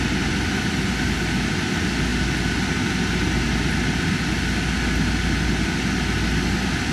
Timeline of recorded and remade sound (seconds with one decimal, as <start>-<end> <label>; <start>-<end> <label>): 0.0-6.9 recorded

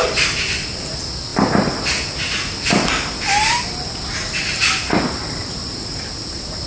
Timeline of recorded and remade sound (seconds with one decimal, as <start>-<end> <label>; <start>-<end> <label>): 0.0-6.7 recorded

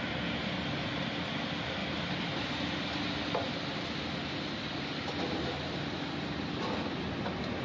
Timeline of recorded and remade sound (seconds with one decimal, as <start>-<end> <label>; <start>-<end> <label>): 0.0-7.6 recorded

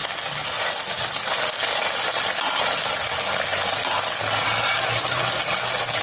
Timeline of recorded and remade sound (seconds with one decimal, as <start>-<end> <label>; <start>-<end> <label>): 0.0-6.0 recorded

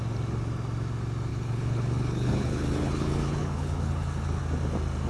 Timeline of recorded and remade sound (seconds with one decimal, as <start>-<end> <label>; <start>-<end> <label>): 0.0-1.3 recorded; 1.3-4.4 remade; 4.4-5.1 recorded

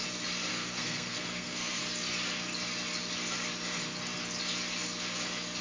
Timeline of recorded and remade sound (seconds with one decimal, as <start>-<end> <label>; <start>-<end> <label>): 0.0-0.5 recorded; 0.5-1.8 remade; 1.8-5.6 recorded

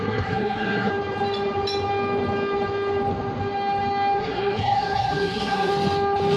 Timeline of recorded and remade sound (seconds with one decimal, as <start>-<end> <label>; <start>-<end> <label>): 0.0-0.9 remade; 0.9-4.2 recorded; 4.2-5.7 remade; 5.7-6.4 recorded